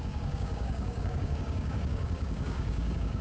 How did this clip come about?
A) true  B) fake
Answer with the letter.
B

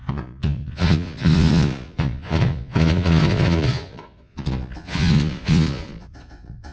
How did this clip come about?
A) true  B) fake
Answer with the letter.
B